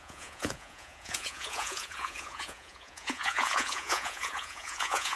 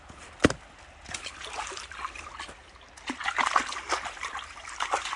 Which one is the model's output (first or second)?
first